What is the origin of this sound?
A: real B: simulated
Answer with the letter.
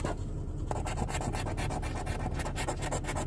A